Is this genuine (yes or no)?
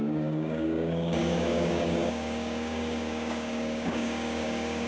no